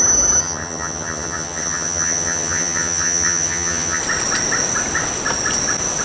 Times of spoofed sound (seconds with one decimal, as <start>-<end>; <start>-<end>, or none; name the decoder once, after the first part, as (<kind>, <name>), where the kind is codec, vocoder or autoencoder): 0.4-4.0 (vocoder, HiFi-GAN)